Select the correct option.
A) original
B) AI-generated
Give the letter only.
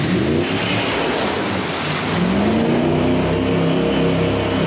A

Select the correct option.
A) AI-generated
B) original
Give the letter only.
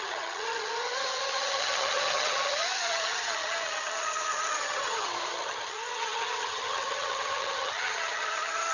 A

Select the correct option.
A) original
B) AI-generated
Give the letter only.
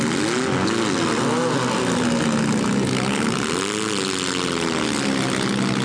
A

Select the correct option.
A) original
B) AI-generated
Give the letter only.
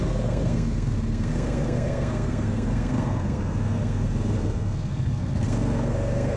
B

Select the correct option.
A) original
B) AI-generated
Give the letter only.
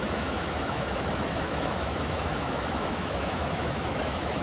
B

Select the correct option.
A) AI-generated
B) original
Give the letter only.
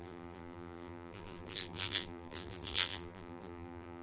A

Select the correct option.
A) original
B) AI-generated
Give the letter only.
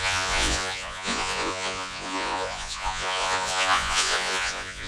B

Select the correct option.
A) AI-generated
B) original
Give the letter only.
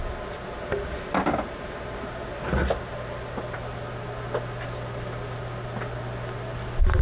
B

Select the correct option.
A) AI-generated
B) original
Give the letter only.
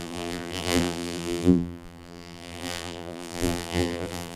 A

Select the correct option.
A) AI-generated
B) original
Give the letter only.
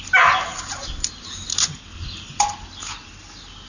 B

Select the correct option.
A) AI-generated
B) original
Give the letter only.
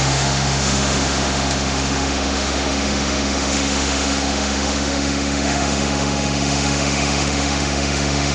A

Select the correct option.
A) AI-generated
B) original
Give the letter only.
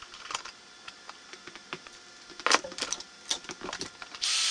B